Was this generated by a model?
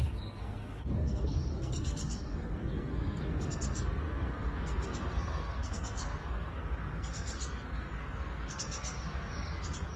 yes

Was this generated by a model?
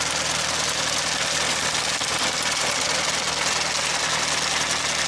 no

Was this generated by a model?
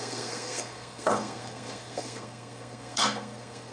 yes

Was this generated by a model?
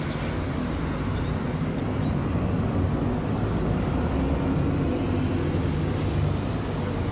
no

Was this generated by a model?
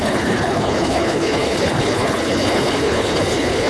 yes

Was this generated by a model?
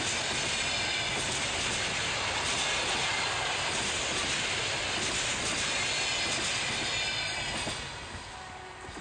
no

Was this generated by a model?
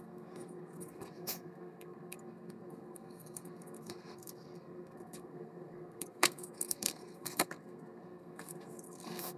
yes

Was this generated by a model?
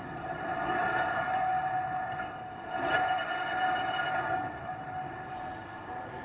no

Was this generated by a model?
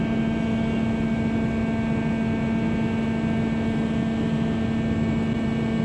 no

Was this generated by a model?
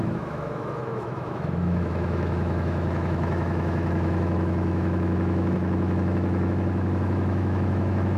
yes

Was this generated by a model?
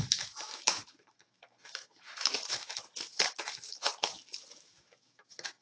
yes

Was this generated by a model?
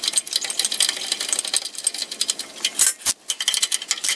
no